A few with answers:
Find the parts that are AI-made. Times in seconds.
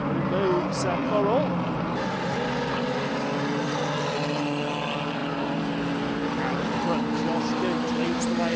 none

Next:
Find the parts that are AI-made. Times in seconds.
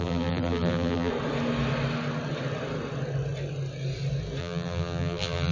0.0-1.1 (vocoder, BigVGAN v2); 4.4-5.5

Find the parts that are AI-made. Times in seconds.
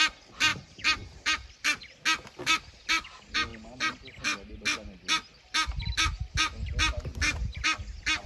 none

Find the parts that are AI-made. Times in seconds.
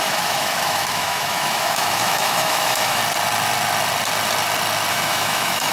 0.0-3.0 (autoencoder, DAC-VAE); 4.9-5.7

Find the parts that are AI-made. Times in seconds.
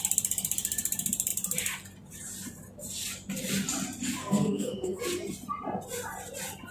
4.2-5.0 (codec, SNAC)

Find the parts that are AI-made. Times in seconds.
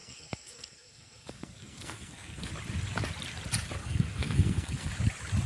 0.0-2.5 (codec, SNAC); 3.8-4.9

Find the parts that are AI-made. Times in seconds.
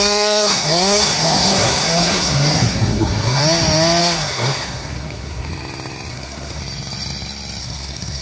0.0-3.4 (codec, SNAC); 4.0-5.5; 6.1-6.6; 7.6-8.2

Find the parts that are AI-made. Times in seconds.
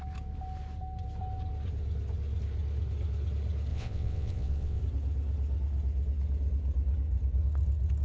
3.7-4.8 (vocoder, WaveNeXt)